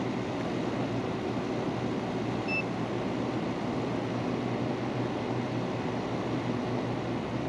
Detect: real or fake real